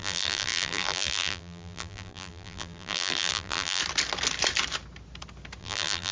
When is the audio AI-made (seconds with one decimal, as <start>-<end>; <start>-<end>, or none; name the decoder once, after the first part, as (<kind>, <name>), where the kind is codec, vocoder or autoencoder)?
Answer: 0.0-3.8 (vocoder, BigVGAN v2); 5.6-6.1